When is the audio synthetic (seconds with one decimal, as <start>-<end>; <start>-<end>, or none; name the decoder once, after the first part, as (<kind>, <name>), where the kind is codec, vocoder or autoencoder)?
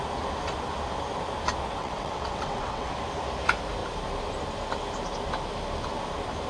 1.8-2.9 (vocoder, WaveNeXt)